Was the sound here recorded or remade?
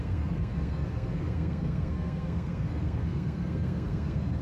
remade